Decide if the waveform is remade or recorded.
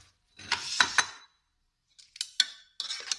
recorded